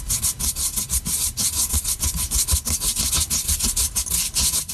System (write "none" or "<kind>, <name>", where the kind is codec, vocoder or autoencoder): none